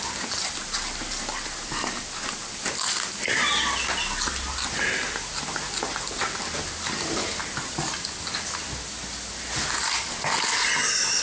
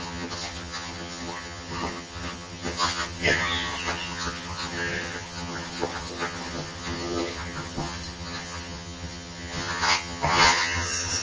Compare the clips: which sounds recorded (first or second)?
first